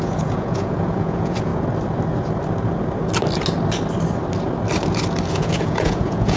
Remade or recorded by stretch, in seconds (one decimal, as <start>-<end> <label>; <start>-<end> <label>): 0.0-1.5 remade; 1.5-5.3 recorded; 5.3-6.4 remade